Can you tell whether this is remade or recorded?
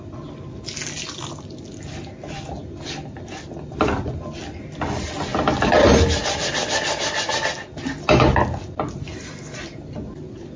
recorded